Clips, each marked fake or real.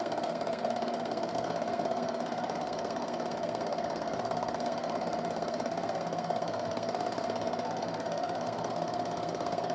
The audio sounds fake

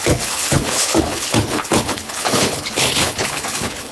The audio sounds fake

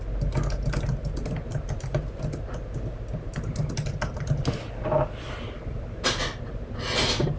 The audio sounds real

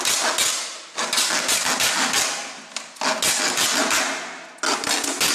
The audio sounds real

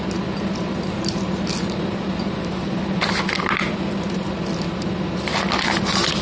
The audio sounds real